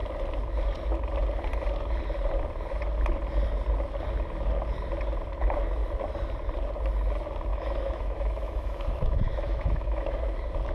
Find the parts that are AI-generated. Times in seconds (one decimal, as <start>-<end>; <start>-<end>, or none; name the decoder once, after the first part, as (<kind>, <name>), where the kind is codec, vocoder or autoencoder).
7.5-10.2 (autoencoder, DAC-VAE)